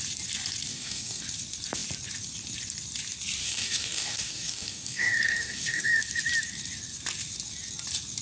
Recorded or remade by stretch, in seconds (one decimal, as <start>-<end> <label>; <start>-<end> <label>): 0.0-0.7 recorded; 0.7-1.2 remade; 1.2-3.4 recorded; 3.4-6.0 remade; 6.0-8.2 recorded